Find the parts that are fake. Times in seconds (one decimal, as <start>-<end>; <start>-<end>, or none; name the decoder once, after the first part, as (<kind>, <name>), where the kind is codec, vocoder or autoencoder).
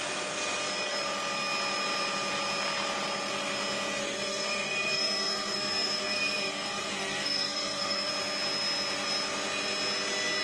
4.0-8.1 (codec, SNAC)